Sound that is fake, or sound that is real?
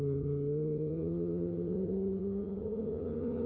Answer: fake